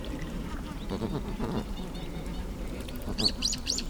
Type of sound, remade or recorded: remade